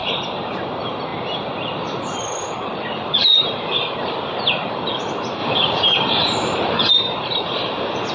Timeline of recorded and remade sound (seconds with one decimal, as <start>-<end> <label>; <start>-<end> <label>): 0.0-0.5 remade; 0.5-5.4 recorded; 5.4-6.9 remade; 6.9-8.1 recorded